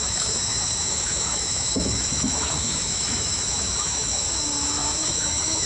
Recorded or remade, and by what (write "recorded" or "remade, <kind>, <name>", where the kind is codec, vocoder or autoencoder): remade, autoencoder, DAC-VAE